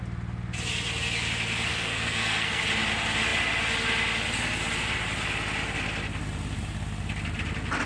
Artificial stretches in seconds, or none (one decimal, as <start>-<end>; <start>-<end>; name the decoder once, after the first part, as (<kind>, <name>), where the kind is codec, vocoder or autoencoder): 1.7-2.6 (codec, SNAC)